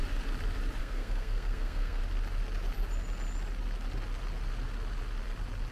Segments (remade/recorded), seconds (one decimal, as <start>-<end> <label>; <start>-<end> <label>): 0.0-0.8 recorded; 0.8-2.0 remade; 2.0-5.7 recorded